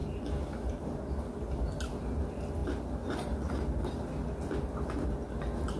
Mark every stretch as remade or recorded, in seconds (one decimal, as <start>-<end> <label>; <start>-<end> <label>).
0.0-5.8 recorded